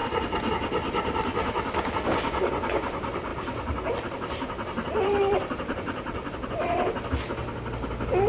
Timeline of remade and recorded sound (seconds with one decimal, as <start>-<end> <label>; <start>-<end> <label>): 0.0-3.3 recorded; 3.3-7.1 remade; 7.1-8.3 recorded